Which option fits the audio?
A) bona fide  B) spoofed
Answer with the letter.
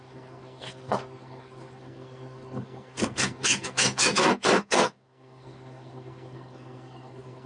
B